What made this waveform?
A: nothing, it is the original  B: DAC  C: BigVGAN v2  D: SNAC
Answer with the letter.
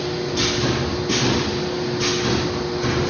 A